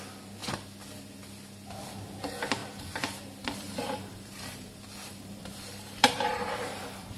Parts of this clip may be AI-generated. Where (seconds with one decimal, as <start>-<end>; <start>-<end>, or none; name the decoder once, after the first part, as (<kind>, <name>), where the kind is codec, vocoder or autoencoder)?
2.6-7.2 (vocoder, BigVGAN v2)